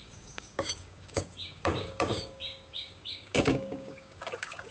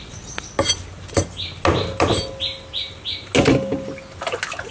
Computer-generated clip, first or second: first